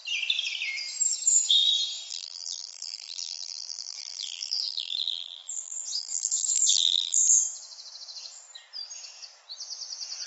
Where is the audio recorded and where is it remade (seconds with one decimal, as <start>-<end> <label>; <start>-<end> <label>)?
0.0-2.1 recorded; 2.1-7.3 remade; 7.3-10.3 recorded